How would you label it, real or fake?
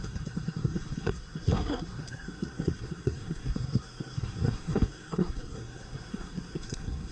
fake